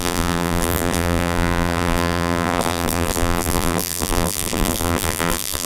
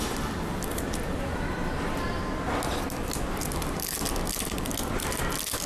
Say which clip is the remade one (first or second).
first